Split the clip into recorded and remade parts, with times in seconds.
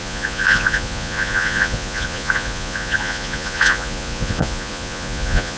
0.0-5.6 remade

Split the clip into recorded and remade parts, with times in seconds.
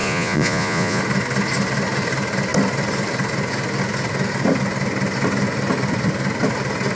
0.0-1.0 remade; 1.0-7.0 recorded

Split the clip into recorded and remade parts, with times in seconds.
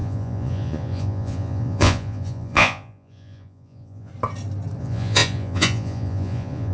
0.0-4.1 remade; 4.1-4.8 recorded; 4.8-6.7 remade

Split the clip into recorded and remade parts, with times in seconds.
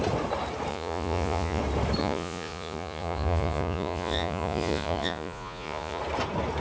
0.0-0.7 recorded; 0.7-1.6 remade; 1.6-2.0 recorded; 2.0-6.0 remade; 6.0-6.6 recorded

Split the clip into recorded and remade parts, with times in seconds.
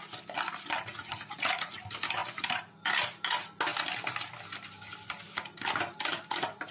0.0-0.9 recorded; 0.9-1.8 remade; 1.8-6.7 recorded